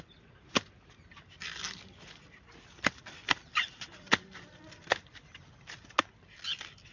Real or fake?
real